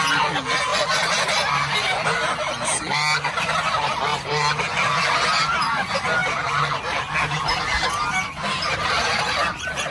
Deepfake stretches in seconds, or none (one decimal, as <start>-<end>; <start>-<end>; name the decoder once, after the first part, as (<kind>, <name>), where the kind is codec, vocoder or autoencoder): none